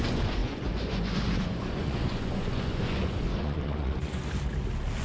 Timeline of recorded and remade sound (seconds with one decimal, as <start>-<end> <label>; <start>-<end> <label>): 0.0-4.2 remade; 4.2-5.0 recorded

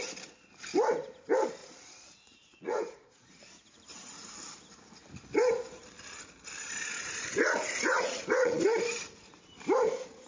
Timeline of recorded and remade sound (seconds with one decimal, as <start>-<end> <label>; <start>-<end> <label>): 0.0-1.6 recorded; 1.6-3.4 remade; 3.4-6.9 recorded; 6.9-8.6 remade; 8.6-10.3 recorded

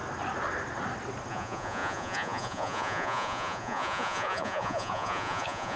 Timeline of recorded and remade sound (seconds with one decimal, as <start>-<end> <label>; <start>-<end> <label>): 0.0-1.3 recorded; 1.3-5.8 remade

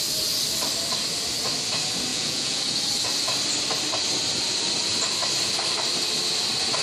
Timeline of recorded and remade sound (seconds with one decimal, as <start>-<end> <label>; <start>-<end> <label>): 0.0-2.1 recorded; 2.1-2.6 remade; 2.6-6.8 recorded

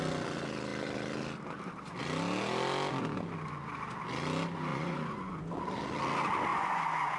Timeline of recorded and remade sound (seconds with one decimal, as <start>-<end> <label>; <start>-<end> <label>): 0.0-4.7 recorded; 4.7-5.4 remade; 5.4-6.5 recorded; 6.5-7.2 remade